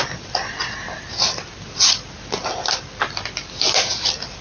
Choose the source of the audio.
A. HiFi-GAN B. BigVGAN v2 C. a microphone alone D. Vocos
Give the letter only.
C